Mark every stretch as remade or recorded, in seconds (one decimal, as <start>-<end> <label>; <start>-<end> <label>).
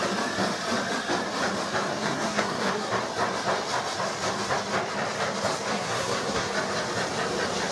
0.0-1.9 recorded; 1.9-2.9 remade; 2.9-5.7 recorded; 5.7-6.5 remade; 6.5-7.7 recorded